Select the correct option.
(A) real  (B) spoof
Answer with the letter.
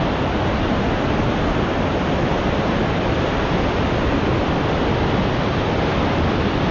A